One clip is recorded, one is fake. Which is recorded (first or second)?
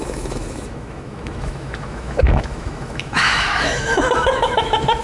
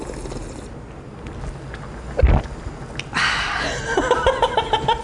second